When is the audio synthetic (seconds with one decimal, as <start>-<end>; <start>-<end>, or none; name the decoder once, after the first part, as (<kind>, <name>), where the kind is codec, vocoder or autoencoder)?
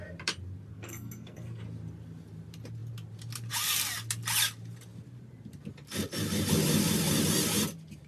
0.7-1.6 (codec, SNAC)